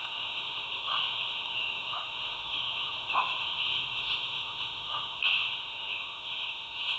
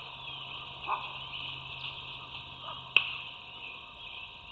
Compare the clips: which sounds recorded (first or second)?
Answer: second